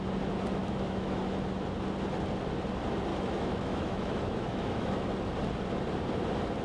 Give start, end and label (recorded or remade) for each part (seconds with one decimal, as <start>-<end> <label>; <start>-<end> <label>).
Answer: 0.0-0.6 recorded; 0.6-1.2 remade; 1.2-3.1 recorded; 3.1-5.1 remade; 5.1-6.6 recorded